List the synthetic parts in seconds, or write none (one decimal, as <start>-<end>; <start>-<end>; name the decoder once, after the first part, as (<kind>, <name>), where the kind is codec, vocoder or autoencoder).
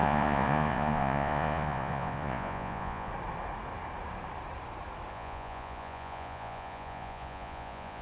0.0-3.1 (vocoder, Vocos); 5.1-8.0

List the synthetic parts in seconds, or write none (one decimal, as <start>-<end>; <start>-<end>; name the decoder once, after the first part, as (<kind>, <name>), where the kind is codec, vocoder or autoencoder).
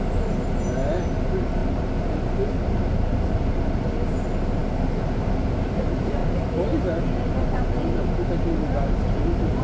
none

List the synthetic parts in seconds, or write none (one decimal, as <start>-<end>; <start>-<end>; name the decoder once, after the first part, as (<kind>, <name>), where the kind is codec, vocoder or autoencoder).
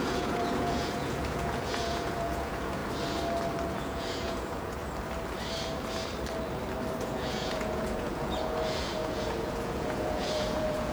0.0-2.8 (vocoder, Vocos); 3.7-4.8; 7.0-10.9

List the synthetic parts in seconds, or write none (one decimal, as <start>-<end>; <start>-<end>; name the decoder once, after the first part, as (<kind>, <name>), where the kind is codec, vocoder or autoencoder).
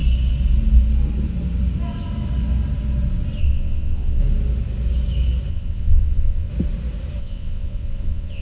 3.4-4.2 (vocoder, WaveNeXt); 5.5-6.5; 7.2-8.4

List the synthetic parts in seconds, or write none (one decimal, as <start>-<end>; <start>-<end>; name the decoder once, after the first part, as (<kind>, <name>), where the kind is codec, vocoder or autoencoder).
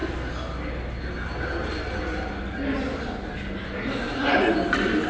none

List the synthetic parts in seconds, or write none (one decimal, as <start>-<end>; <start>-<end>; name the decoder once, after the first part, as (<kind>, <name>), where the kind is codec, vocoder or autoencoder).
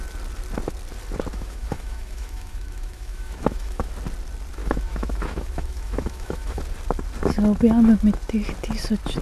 1.3-3.9 (autoencoder, DAC-VAE); 4.6-6.6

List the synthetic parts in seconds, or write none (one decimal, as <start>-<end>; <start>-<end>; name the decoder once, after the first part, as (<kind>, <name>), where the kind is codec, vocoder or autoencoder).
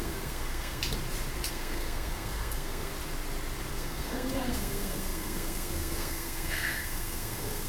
0.0-0.8 (codec, SNAC); 1.5-2.9; 3.7-7.7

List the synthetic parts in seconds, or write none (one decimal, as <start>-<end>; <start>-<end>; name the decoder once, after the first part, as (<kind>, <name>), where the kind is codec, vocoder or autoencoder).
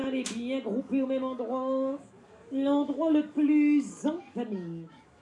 0.8-5.2 (codec, DAC)